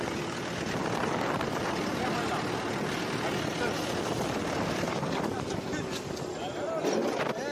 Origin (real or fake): real